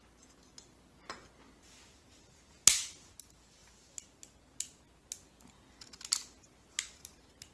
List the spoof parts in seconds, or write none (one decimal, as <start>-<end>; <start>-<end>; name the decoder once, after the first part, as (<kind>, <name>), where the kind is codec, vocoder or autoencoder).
none